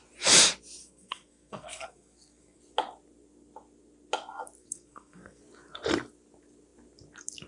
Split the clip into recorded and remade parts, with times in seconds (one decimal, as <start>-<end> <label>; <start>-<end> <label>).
0.0-0.8 recorded; 0.8-2.6 remade; 2.6-4.6 recorded; 4.6-5.4 remade; 5.4-7.5 recorded